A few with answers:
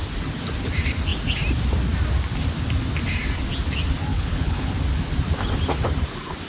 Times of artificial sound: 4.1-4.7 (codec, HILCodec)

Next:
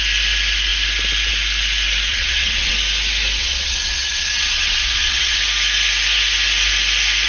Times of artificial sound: 2.1-2.7 (vocoder, WaveNeXt); 3.4-5.4

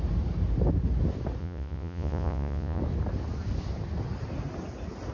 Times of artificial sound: 1.4-2.8 (vocoder, Vocos)

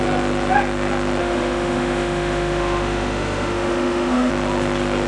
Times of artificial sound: 1.2-4.3 (autoencoder, DAC-VAE)

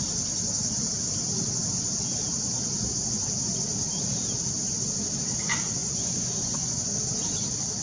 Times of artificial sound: 5.8-6.9 (vocoder, Vocos)

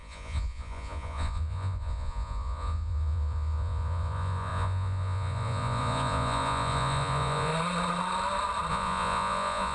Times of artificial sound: 0.0-7.5 (vocoder, Vocos); 8.7-9.7

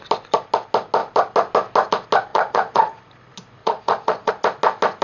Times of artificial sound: 2.3-3.0 (vocoder, Vocos); 3.6-4.3